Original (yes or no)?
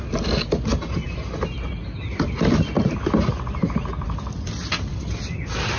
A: yes